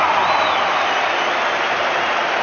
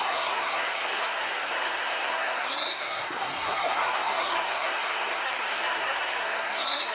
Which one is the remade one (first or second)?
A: second